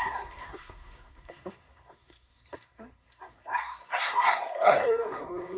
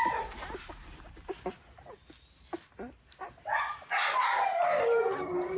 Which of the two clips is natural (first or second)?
second